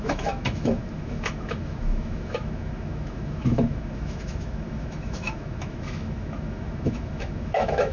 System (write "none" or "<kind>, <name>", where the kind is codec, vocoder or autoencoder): autoencoder, DAC-VAE